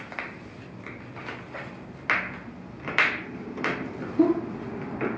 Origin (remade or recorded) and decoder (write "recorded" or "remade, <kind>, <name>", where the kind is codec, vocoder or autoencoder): recorded